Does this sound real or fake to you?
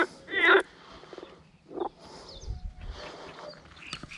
real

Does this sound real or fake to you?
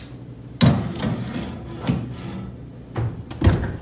real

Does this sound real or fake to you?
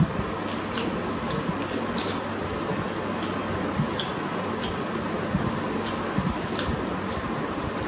real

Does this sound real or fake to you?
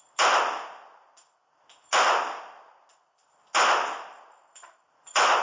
real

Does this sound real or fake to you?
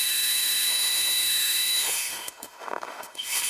fake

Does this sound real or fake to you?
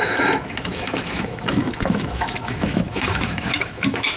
fake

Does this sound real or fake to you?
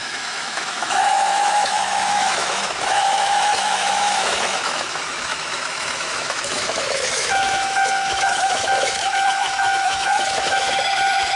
fake